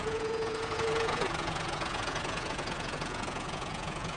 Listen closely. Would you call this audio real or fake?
fake